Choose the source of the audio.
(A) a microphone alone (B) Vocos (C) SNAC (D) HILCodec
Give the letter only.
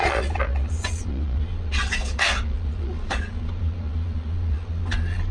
B